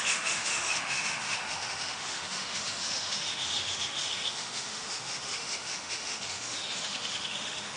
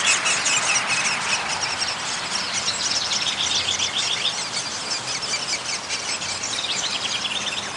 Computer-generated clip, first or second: first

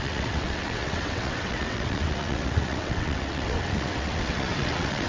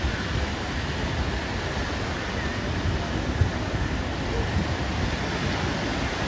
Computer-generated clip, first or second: first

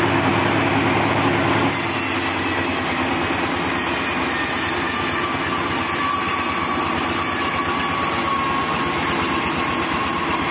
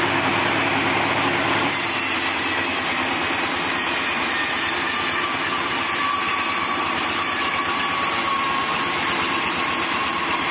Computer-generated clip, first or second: second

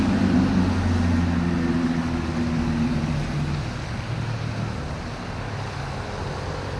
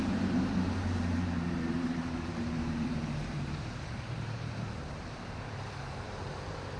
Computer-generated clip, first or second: second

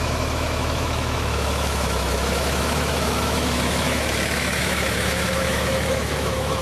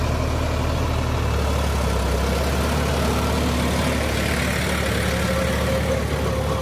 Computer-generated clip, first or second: first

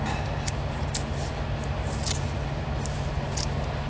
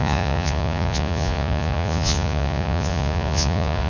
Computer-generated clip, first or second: second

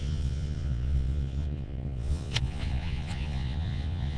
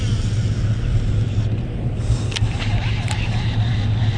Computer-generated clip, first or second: first